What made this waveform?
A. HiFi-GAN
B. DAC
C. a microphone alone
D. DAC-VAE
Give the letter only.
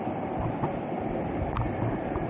C